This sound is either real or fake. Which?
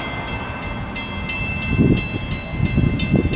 real